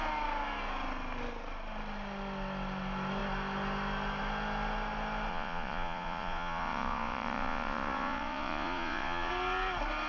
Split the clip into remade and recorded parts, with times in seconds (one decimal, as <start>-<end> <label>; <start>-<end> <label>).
0.0-5.3 recorded; 5.3-9.3 remade; 9.3-10.1 recorded